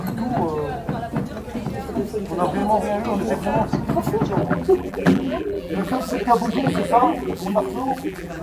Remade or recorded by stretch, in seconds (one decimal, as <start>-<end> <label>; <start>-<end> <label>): 0.0-4.4 recorded; 4.4-8.4 remade